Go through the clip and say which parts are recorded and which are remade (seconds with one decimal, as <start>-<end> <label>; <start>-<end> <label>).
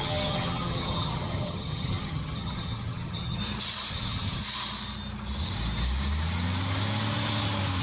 0.0-3.4 remade; 3.4-3.9 recorded; 3.9-4.4 remade; 4.4-7.8 recorded